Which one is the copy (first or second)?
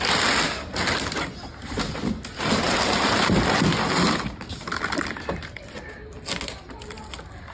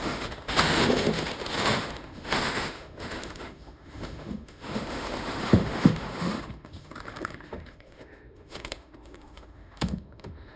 second